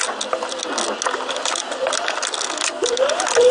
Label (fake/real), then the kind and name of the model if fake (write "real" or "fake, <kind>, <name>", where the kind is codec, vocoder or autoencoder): real